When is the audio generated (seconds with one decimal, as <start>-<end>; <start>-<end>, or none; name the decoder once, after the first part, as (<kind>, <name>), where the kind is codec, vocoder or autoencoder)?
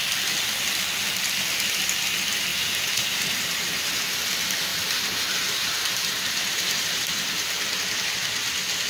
2.5-3.9 (vocoder, BigVGAN v2); 4.7-7.2